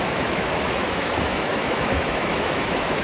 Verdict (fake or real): fake